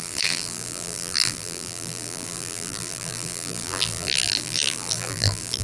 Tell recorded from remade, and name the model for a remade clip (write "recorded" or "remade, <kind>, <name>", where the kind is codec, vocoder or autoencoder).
remade, vocoder, BigVGAN v2